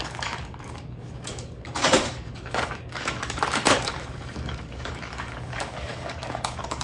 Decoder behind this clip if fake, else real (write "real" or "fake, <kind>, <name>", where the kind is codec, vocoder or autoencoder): fake, codec, DAC